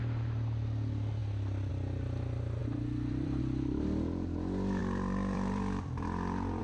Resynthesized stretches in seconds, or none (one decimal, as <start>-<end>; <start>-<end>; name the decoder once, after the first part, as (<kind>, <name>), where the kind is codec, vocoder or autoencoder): 2.6-3.4 (vocoder, BigVGAN v2); 4.8-6.6